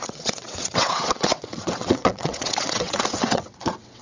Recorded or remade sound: remade